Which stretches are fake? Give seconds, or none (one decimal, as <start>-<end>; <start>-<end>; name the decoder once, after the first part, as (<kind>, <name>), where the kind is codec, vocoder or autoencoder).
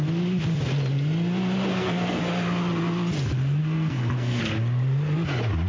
1.7-2.2 (codec, SNAC); 3.6-4.4